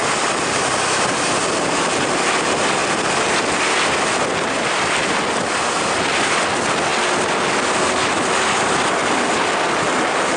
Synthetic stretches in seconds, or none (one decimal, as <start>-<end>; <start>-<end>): none